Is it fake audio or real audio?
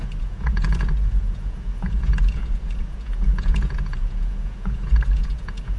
fake